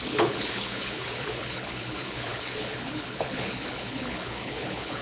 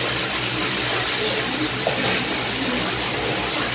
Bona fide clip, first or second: second